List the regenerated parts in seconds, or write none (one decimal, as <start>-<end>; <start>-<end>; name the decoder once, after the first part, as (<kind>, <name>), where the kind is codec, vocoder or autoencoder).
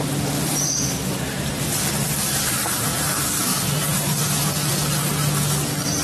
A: none